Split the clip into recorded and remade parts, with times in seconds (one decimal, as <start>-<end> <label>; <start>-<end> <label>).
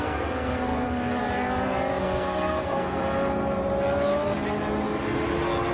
0.0-1.2 remade; 1.2-2.0 recorded; 2.0-3.0 remade; 3.0-5.7 recorded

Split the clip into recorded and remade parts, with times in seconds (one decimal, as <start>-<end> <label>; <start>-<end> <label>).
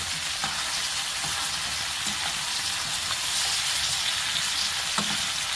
0.0-5.6 recorded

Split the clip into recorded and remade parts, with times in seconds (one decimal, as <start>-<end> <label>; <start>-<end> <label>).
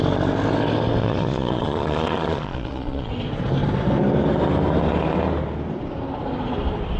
0.0-1.0 recorded; 1.0-3.1 remade; 3.1-7.0 recorded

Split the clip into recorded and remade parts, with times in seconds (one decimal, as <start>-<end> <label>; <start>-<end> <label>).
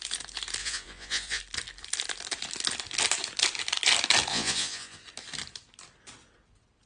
0.0-0.6 recorded; 0.6-1.4 remade; 1.4-4.3 recorded; 4.3-5.0 remade; 5.0-6.9 recorded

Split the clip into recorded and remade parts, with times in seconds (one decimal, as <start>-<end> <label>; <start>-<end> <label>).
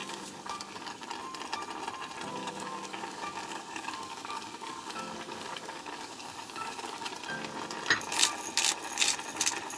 0.0-1.1 remade; 1.1-2.3 recorded; 2.3-7.1 remade; 7.1-9.8 recorded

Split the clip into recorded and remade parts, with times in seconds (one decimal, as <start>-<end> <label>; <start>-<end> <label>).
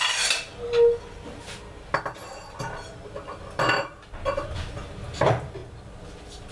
0.0-6.5 recorded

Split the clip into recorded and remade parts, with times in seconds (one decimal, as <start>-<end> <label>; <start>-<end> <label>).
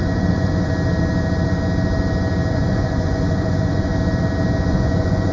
0.0-0.7 remade; 0.7-2.5 recorded; 2.5-3.9 remade; 3.9-4.7 recorded; 4.7-5.3 remade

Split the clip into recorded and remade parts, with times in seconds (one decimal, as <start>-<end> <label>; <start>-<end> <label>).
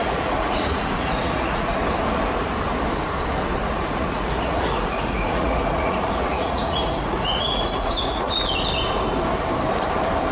0.0-1.8 remade; 1.8-3.6 recorded; 3.6-8.3 remade; 8.3-10.3 recorded